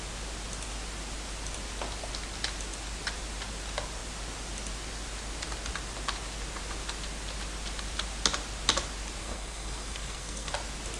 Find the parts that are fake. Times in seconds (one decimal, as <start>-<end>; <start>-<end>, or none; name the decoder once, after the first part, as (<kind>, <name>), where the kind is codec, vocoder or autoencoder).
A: 9.2-10.5 (codec, SNAC)